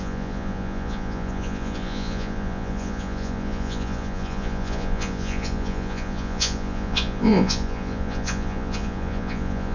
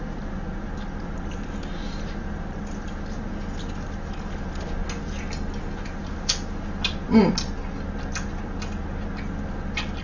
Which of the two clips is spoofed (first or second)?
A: first